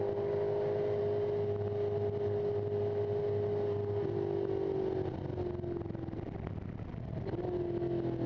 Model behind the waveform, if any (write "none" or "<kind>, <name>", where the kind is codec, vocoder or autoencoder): none